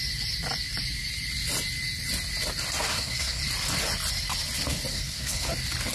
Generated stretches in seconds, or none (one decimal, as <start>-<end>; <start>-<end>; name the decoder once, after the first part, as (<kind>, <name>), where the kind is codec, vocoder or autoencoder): 2.9-3.4 (codec, SNAC); 4.9-5.5